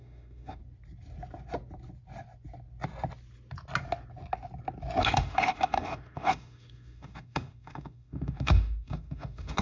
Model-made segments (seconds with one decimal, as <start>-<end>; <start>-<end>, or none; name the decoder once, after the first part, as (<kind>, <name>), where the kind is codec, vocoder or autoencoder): 0.0-0.6 (autoencoder, DAC-VAE); 5.0-9.6